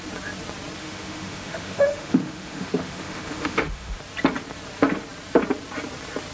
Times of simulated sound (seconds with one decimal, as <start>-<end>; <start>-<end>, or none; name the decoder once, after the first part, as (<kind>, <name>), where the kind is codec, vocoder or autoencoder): 0.8-4.0 (autoencoder, DAC-VAE)